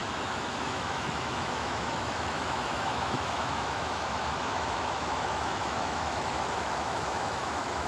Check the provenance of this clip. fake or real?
fake